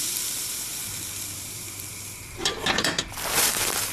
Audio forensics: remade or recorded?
remade